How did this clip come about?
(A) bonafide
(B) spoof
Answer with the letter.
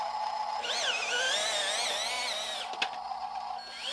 A